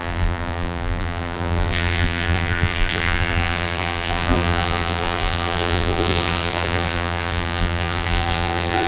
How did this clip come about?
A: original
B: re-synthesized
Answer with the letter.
B